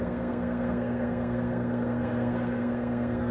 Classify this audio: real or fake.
fake